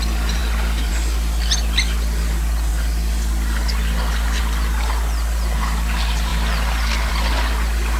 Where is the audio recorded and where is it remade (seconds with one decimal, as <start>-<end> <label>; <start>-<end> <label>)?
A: 0.0-8.0 recorded